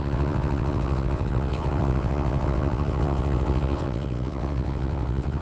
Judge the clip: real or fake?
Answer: fake